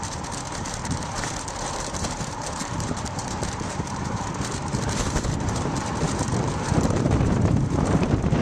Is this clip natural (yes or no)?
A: no